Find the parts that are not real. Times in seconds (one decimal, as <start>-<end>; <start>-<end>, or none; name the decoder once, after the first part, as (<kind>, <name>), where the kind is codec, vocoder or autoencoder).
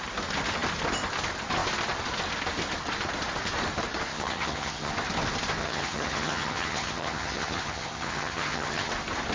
4.1-4.9 (vocoder, HiFi-GAN); 5.6-8.9